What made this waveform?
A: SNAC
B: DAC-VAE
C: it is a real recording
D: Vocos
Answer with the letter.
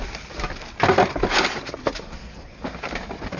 C